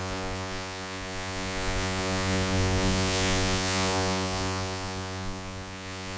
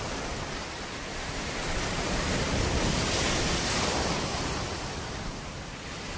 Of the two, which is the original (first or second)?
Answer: second